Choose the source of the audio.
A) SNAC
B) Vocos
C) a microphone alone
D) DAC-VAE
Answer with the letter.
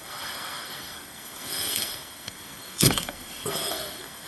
A